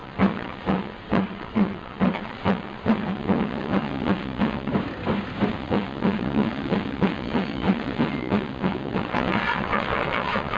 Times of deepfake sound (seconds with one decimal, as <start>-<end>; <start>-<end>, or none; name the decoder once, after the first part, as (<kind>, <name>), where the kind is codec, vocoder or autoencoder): 0.0-4.7 (vocoder, WaveNeXt); 5.5-10.6